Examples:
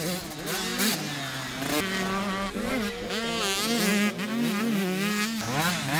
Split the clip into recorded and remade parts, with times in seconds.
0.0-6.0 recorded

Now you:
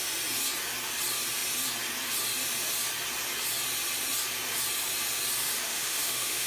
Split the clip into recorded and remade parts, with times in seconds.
0.0-5.7 recorded; 5.7-6.5 remade

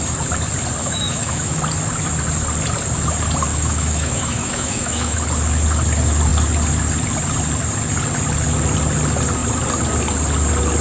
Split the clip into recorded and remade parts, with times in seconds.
0.0-0.8 recorded; 0.8-1.6 remade; 1.6-3.5 recorded; 3.5-5.2 remade; 5.2-10.8 recorded